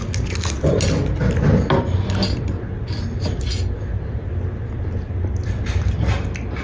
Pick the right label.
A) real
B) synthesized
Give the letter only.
A